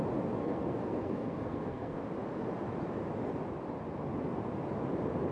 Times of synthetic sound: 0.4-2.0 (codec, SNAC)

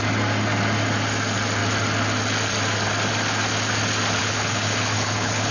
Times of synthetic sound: 4.2-5.5 (codec, HILCodec)

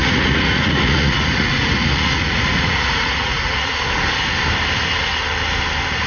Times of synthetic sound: 0.0-3.7 (vocoder, Vocos)

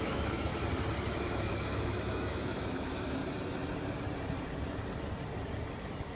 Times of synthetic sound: 0.0-0.5 (autoencoder, DAC-VAE); 1.1-3.2; 5.8-6.2

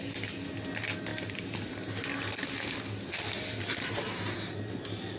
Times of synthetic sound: none